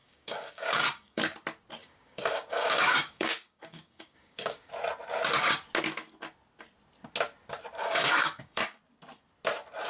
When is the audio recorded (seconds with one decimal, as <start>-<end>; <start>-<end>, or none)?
1.2-1.8; 4.7-7.8; 8.8-9.9